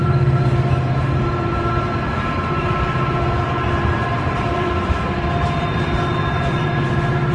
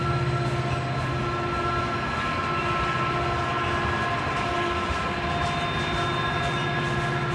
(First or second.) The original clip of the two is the second